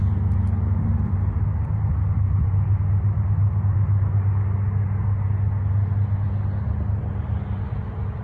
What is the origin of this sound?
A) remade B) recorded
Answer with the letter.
B